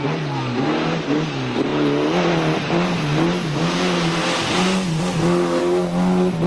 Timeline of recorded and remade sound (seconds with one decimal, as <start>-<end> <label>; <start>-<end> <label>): 0.0-6.5 recorded